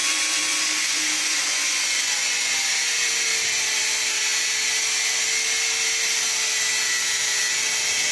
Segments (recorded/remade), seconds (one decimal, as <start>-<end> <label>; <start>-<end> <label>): 0.0-2.5 remade; 2.5-8.1 recorded